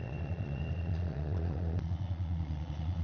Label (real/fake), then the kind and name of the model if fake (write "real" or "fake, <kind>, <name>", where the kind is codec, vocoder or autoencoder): fake, vocoder, Vocos